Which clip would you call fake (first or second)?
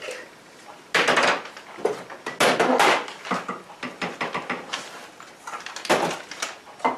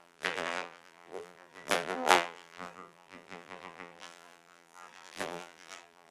second